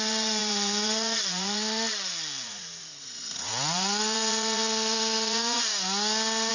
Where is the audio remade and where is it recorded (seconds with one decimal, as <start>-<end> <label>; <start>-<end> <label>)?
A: 0.0-5.7 remade; 5.7-6.5 recorded